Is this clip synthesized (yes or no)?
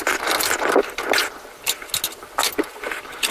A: no